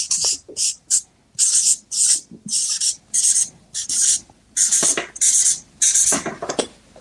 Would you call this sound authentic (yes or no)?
yes